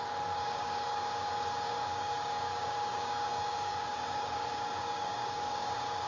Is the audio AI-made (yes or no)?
yes